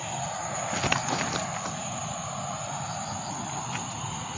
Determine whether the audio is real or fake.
real